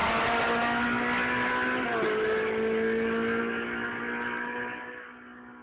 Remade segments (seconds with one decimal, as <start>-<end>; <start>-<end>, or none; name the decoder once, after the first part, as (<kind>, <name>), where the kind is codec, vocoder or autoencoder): none